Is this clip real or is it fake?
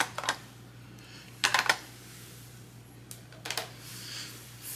real